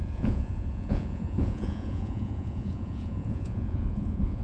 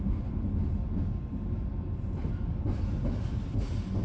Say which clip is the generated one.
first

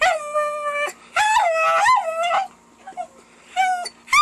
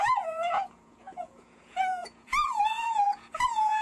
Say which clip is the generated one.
second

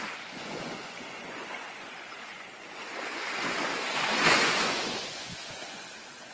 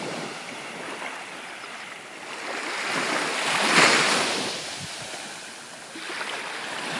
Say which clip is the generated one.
first